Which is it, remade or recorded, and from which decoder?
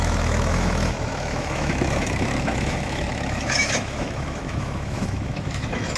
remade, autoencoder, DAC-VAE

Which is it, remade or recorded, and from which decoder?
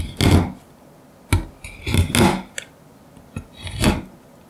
recorded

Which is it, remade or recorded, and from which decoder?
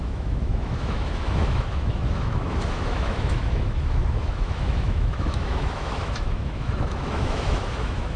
remade, autoencoder, DAC-VAE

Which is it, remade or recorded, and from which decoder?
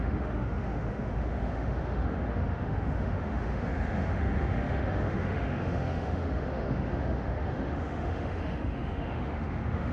remade, autoencoder, DAC-VAE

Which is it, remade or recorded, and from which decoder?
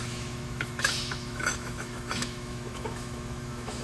remade, autoencoder, DAC-VAE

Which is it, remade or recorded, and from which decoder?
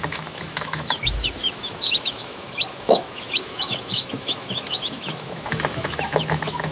remade, autoencoder, DAC-VAE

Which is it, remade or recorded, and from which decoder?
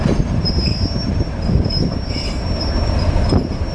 recorded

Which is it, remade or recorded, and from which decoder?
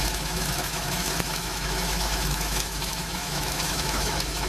remade, autoencoder, DAC-VAE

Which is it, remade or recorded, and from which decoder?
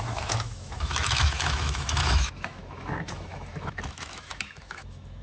remade, autoencoder, DAC-VAE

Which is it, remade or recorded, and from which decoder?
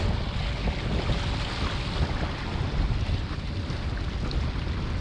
recorded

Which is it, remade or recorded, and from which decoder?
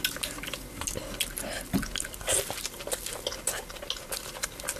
recorded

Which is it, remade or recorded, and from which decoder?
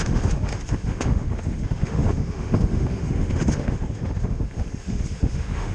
remade, autoencoder, DAC-VAE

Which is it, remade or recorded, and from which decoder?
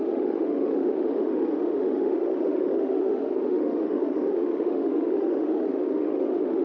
remade, autoencoder, DAC-VAE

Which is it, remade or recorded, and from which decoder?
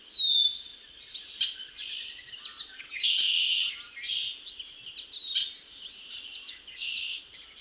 recorded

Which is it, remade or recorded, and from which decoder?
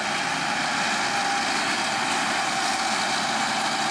recorded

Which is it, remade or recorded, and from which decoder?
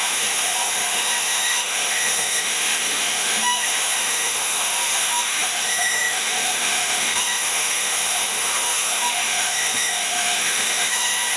remade, autoencoder, DAC-VAE